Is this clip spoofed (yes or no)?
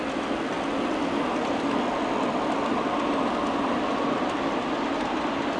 no